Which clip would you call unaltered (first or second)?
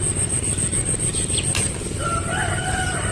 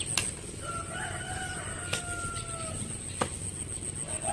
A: second